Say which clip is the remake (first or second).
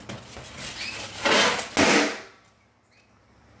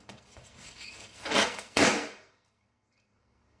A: second